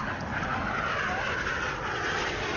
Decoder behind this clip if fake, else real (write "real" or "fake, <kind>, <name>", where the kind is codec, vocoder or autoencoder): real